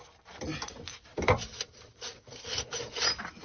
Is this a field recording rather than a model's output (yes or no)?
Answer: yes